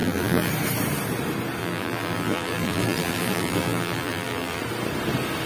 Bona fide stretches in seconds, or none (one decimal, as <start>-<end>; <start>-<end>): 0.5-1.6; 4.6-5.5